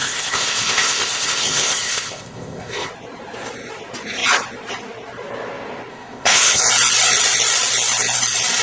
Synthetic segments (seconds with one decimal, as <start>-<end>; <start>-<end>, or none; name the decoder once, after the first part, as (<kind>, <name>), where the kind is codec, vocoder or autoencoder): 0.0-2.9 (codec, ZipCodec); 5.9-6.6